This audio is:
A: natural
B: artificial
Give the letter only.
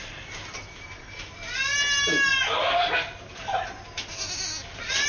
A